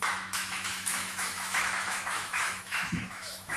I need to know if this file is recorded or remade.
remade